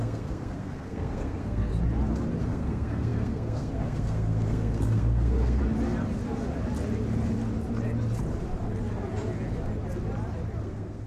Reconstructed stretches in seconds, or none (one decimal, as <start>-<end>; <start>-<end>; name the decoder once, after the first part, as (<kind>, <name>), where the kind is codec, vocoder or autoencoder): 0.0-1.7 (codec, SNAC); 2.4-5.6; 10.6-11.1